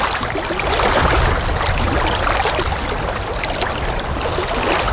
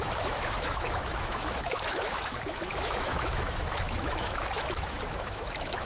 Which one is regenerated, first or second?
second